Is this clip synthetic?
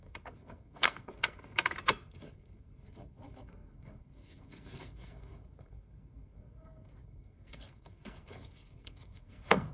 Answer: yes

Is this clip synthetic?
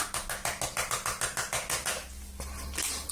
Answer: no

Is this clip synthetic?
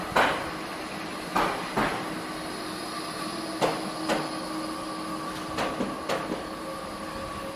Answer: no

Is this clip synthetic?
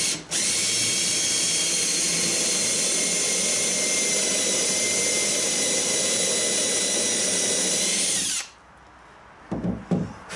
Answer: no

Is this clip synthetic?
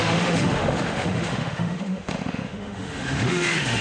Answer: yes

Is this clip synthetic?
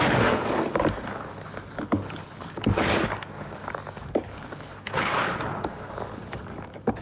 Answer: yes